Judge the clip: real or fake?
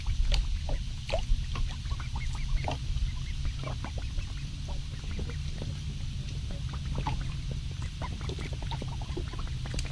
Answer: real